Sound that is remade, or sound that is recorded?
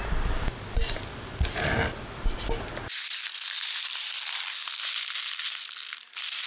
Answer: recorded